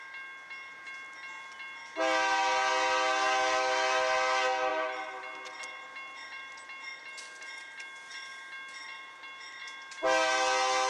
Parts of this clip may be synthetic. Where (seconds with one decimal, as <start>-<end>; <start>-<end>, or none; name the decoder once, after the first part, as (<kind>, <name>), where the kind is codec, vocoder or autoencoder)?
none